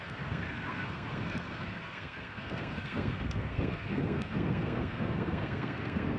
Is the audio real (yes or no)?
no